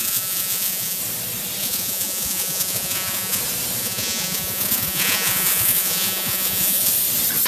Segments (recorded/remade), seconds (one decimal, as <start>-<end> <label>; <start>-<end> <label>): 0.0-1.0 remade; 1.0-1.6 recorded; 1.6-3.4 remade; 3.4-3.8 recorded; 3.8-6.9 remade; 6.9-7.5 recorded